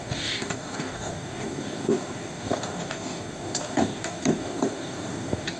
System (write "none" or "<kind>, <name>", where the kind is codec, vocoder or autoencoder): codec, DAC